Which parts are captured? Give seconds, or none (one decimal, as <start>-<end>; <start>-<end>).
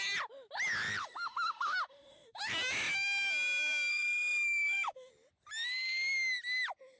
0.0-1.0; 2.5-3.9; 5.1-7.0